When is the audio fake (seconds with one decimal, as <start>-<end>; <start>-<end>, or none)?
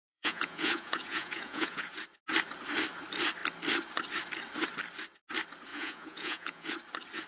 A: 0.0-1.9; 5.7-6.7